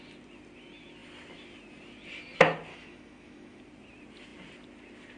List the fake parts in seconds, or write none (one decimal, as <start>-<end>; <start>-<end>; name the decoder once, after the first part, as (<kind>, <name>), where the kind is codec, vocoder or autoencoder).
2.7-3.6 (autoencoder, DAC-VAE)